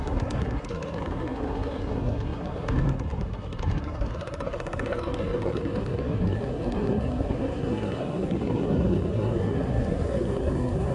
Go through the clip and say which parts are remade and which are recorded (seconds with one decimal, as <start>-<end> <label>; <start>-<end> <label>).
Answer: 0.0-10.9 remade